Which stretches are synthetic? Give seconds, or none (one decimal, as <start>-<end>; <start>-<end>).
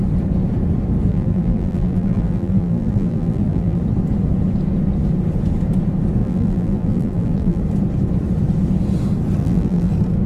1.1-3.8; 6.2-7.6; 9.4-9.9